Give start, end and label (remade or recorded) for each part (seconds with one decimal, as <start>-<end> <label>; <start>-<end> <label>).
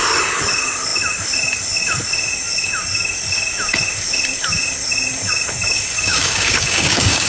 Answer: 0.0-6.1 recorded; 6.1-7.3 remade